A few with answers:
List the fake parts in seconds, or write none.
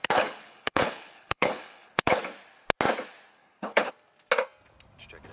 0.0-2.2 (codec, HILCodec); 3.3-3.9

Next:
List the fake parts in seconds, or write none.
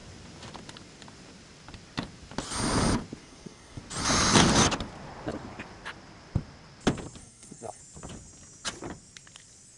3.2-3.8 (codec, SNAC); 7.2-7.8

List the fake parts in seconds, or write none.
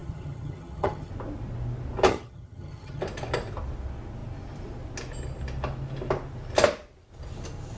0.0-1.1 (vocoder, HiFi-GAN); 2.1-3.0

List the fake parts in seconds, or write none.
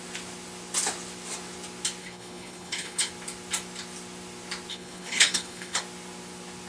2.0-3.1 (codec, HILCodec); 4.7-5.8